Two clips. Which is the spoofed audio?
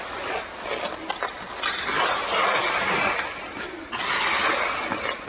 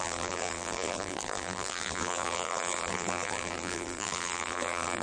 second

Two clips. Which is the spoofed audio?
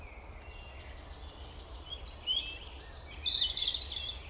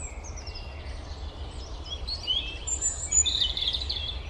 second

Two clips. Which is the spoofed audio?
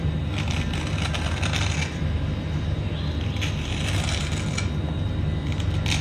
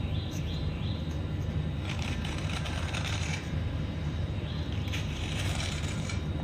second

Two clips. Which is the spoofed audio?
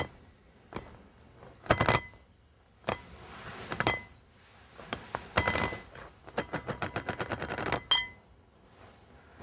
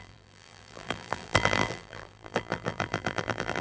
second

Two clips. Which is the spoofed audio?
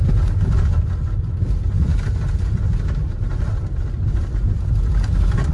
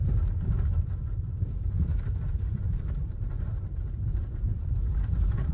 second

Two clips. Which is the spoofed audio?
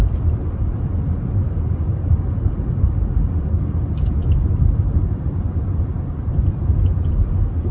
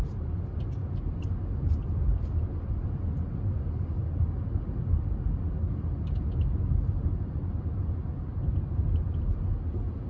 first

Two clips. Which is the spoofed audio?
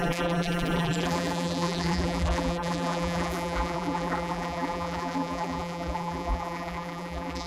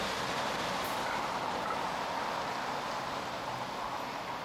first